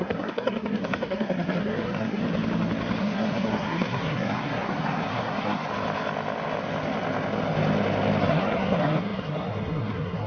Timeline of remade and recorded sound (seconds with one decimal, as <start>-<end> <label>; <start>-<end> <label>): 0.0-2.2 remade; 2.2-3.0 recorded; 3.0-5.7 remade; 5.7-8.2 recorded; 8.2-10.3 remade